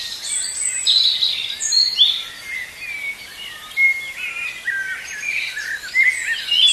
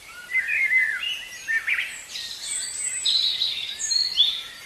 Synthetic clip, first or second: second